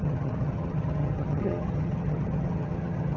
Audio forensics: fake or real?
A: fake